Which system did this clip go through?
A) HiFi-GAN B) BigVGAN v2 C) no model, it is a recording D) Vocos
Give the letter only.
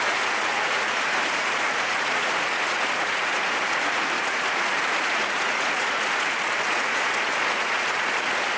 D